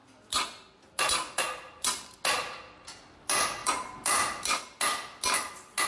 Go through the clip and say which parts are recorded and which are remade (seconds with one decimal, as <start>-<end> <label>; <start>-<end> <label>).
0.0-5.9 recorded